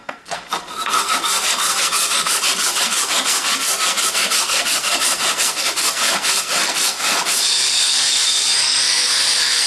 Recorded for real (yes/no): no